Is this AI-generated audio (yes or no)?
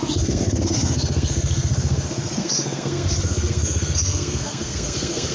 yes